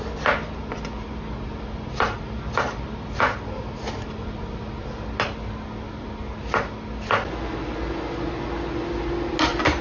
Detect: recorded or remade recorded